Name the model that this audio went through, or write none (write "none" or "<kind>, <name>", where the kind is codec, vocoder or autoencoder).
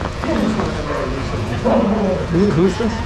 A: vocoder, Vocos